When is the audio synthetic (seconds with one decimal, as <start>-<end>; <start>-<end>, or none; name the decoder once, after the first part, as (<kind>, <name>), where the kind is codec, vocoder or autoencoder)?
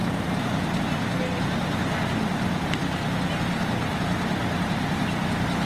none